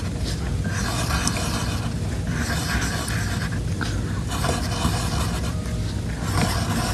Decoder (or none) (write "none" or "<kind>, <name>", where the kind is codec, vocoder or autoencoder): none